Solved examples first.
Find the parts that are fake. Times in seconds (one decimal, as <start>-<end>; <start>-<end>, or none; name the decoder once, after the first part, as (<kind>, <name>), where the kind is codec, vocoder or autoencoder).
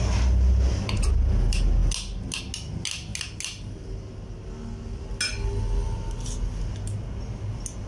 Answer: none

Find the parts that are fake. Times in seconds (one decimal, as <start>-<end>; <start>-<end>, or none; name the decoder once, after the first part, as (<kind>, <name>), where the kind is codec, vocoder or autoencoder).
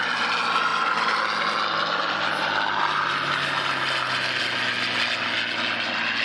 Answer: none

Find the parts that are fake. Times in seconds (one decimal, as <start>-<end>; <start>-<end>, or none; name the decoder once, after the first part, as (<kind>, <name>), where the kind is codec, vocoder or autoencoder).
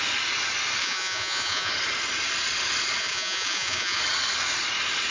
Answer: 0.8-1.7 (vocoder, Vocos); 3.0-4.0